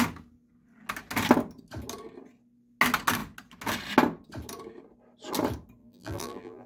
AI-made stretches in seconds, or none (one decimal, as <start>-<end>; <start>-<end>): 5.8-6.7